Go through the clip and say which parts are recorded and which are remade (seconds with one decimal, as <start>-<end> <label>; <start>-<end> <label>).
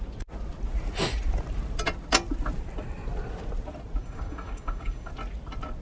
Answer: 0.0-4.0 recorded; 4.0-5.1 remade; 5.1-5.8 recorded